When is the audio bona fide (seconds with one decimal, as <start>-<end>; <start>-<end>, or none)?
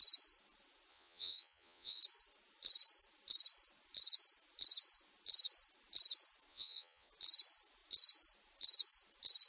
0.0-0.9; 2.0-6.5; 7.1-9.5